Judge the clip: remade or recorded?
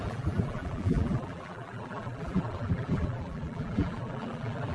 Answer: remade